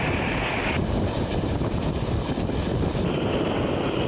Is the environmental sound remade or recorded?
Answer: recorded